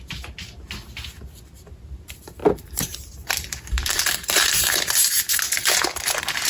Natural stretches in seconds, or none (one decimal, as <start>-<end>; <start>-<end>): 0.0-2.4; 4.8-6.5